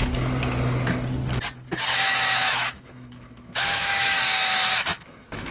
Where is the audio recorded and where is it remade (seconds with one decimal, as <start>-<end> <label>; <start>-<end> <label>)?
0.0-1.9 recorded; 1.9-5.5 remade

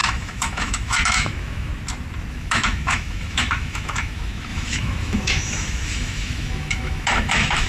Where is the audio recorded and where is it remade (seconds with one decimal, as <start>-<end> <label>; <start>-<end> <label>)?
0.0-1.7 remade; 1.7-2.3 recorded; 2.3-7.7 remade

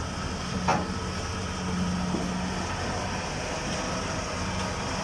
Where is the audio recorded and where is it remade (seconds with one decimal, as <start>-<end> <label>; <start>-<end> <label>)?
0.0-5.0 recorded

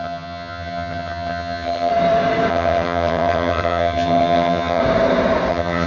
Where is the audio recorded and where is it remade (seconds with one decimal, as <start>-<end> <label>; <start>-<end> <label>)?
0.0-1.9 remade; 1.9-2.5 recorded; 2.5-4.8 remade; 4.8-5.5 recorded; 5.5-5.9 remade

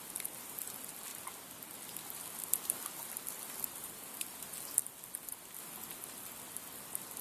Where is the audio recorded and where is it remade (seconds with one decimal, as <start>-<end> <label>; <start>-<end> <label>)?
0.0-7.2 recorded